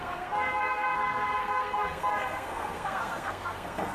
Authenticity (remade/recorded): remade